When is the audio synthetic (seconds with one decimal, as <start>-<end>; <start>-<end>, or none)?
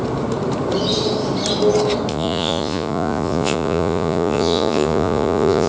2.1-5.7